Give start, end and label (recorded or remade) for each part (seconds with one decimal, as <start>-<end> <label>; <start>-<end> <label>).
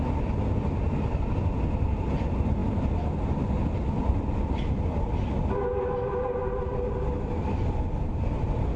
0.0-8.8 recorded